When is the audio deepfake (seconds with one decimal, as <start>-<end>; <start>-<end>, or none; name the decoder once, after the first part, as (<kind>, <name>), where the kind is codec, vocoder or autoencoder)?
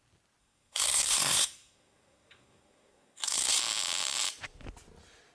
0.4-3.6 (codec, SNAC)